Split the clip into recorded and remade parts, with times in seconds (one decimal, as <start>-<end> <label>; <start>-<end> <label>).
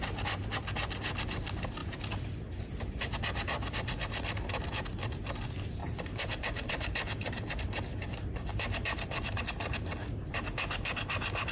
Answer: 0.0-5.8 recorded; 5.8-9.4 remade; 9.4-11.5 recorded